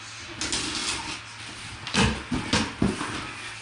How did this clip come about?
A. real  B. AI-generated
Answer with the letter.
A